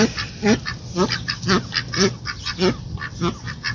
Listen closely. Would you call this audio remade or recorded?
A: recorded